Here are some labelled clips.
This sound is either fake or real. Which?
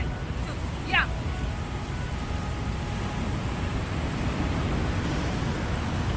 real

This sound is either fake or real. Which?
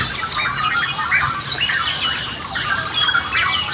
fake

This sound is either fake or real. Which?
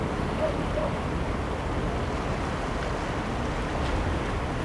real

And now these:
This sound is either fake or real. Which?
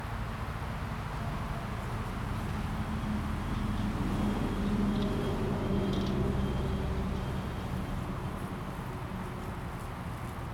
real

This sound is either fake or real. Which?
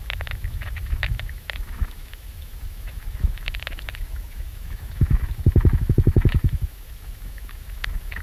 fake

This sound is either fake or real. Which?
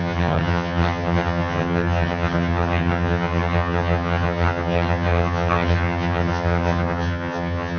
fake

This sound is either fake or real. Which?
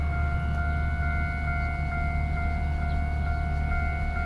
real